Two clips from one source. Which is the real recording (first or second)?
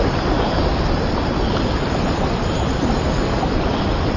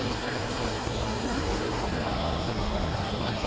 first